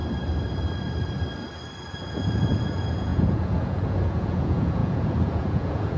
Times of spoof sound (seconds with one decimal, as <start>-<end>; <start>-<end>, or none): 1.9-6.0